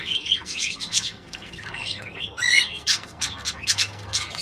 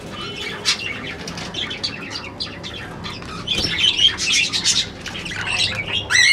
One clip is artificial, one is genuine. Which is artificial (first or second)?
first